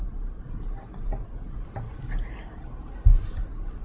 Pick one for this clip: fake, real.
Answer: real